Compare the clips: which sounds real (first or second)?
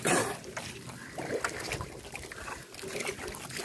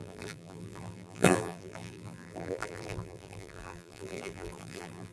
first